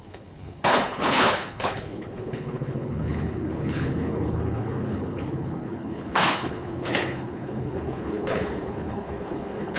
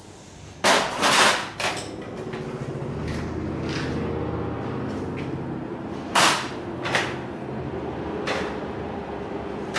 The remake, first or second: first